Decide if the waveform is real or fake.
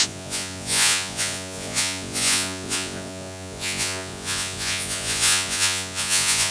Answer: fake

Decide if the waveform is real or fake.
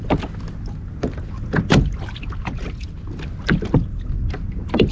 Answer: real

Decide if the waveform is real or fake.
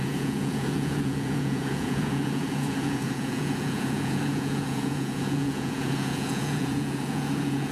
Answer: fake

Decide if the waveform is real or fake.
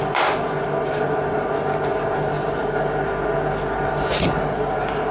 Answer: real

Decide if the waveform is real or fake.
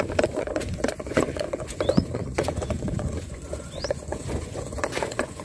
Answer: fake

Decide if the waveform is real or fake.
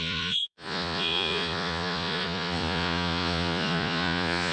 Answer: fake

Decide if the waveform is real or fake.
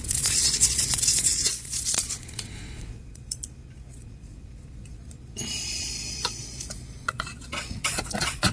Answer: fake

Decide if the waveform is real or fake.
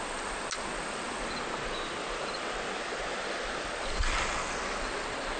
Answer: real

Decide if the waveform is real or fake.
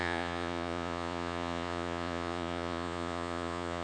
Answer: fake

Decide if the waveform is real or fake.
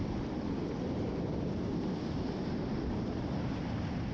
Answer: real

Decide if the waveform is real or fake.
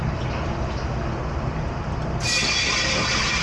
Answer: real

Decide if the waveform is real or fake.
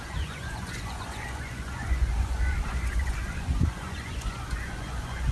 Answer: fake